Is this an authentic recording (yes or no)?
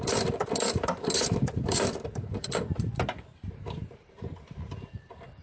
no